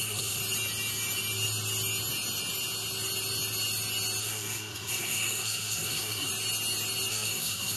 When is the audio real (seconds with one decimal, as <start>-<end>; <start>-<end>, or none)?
0.4-4.2; 6.3-7.1